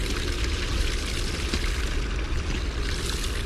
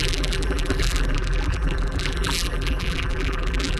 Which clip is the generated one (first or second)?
second